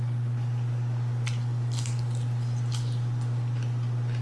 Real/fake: real